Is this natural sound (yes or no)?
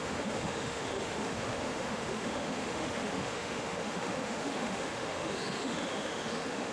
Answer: no